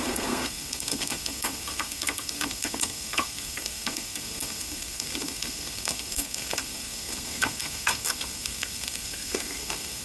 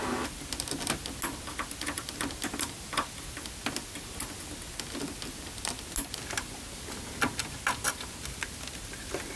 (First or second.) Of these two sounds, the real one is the second